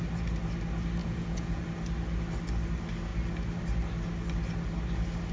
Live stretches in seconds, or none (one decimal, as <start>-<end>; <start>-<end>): 0.0-1.0; 1.6-5.3